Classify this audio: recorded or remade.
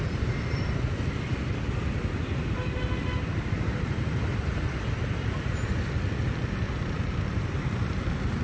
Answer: recorded